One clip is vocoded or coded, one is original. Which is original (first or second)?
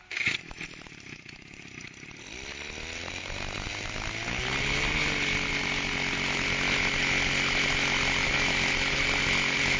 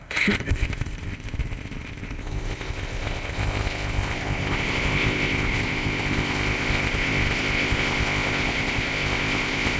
first